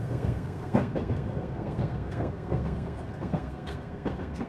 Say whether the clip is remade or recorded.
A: remade